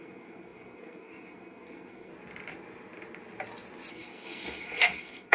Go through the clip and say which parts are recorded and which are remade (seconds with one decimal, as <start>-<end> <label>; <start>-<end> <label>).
0.0-2.1 remade; 2.1-3.9 recorded; 3.9-5.3 remade